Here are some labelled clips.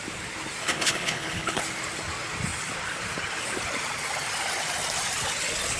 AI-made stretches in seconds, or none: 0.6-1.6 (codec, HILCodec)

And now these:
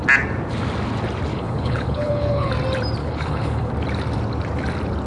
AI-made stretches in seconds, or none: 1.3-2.5 (codec, HILCodec); 3.0-3.7

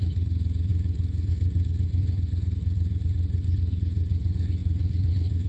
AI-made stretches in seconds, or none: 0.0-5.5 (codec, HILCodec)

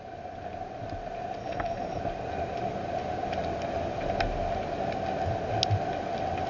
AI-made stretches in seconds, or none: 1.4-2.0 (codec, HILCodec)